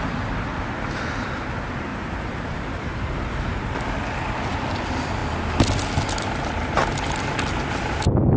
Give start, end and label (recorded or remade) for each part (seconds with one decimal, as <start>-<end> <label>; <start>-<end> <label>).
0.0-1.9 recorded; 1.9-3.6 remade; 3.6-8.4 recorded